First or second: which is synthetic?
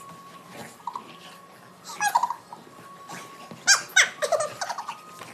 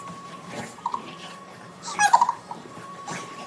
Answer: second